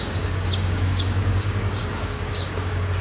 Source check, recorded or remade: remade